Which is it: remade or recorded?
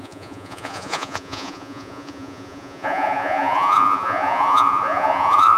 remade